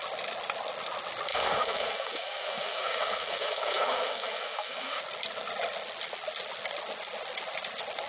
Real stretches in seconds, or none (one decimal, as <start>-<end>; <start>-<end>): 0.0-1.3; 5.0-8.1